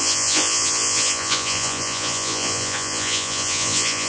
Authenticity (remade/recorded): remade